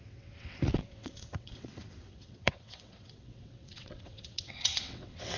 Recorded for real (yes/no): no